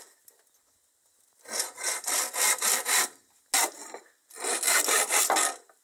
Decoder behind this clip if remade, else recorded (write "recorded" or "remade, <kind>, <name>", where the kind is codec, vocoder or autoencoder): recorded